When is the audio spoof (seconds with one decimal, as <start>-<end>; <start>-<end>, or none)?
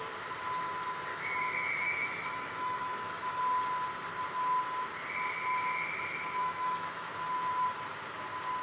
1.1-3.4; 6.4-7.1